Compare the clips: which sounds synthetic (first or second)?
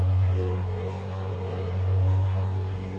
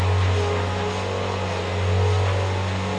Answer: first